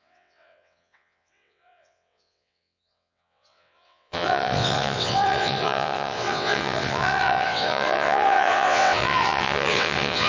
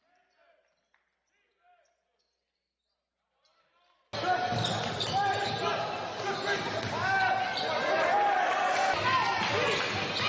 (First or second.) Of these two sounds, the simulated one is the first